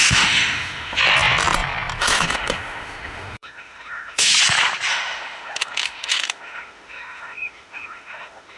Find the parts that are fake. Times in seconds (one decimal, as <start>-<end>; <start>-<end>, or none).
0.0-1.0; 2.0-4.3; 4.9-8.6